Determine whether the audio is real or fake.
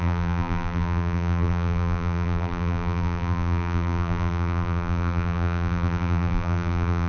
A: fake